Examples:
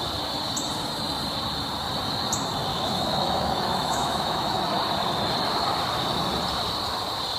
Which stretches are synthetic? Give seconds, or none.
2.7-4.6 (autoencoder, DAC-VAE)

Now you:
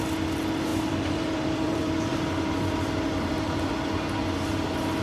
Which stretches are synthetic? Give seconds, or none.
0.7-3.7 (vocoder, BigVGAN v2)

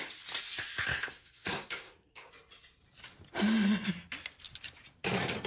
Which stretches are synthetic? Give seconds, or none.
0.9-2.3 (codec, SNAC)

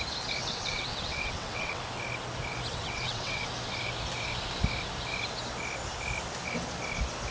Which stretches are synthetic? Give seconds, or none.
0.4-1.8 (vocoder, WaveNeXt); 2.7-3.4

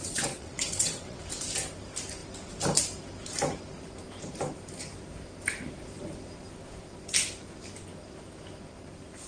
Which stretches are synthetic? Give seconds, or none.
0.0-1.2 (vocoder, WaveNeXt)